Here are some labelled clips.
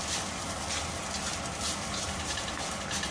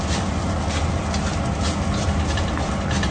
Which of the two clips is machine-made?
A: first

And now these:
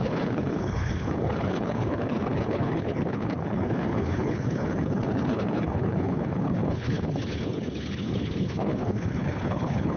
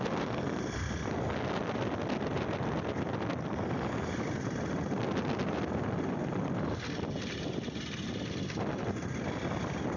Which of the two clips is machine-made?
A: first